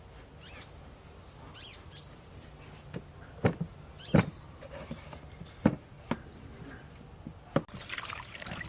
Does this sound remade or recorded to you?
recorded